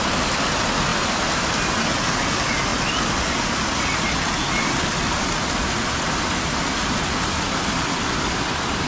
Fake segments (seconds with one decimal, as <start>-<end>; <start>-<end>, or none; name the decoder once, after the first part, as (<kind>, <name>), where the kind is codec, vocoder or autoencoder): none